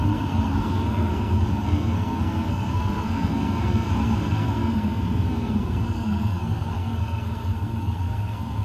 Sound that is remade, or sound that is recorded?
remade